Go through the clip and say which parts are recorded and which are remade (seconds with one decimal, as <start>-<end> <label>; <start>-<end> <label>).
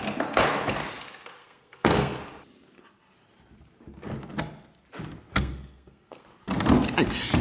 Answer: 0.0-1.4 recorded; 1.4-2.2 remade; 2.2-5.3 recorded; 5.3-6.2 remade; 6.2-7.4 recorded